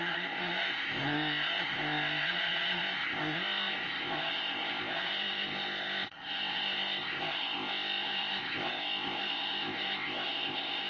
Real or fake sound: fake